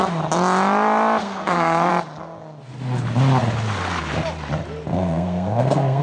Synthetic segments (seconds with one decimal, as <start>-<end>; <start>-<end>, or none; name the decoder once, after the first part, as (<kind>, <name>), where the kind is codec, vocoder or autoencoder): 1.2-1.9 (codec, SNAC); 4.9-6.0